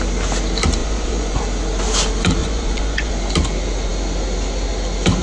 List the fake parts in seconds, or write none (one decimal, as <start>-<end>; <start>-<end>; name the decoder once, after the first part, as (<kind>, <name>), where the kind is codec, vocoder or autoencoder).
0.8-1.4 (vocoder, Vocos); 2.4-3.1